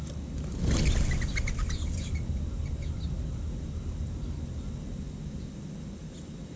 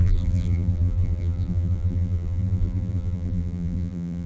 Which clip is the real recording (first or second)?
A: first